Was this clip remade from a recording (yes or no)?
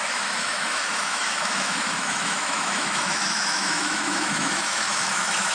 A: yes